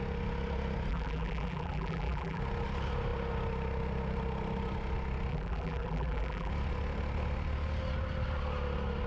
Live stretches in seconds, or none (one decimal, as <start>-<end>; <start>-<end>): 0.0-0.9; 2.4-5.3; 6.5-9.1